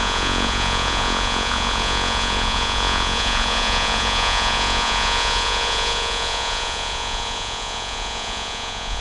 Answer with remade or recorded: remade